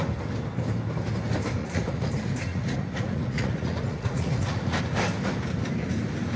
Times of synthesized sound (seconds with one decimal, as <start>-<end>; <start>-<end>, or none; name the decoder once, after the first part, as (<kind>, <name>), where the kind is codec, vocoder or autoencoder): 1.6-2.1 (vocoder, Vocos); 2.5-4.8